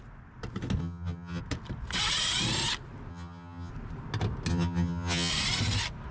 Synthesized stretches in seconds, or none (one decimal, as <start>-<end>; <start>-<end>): 0.8-1.4; 3.1-3.7; 4.5-5.3